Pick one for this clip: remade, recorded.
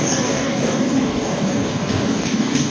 remade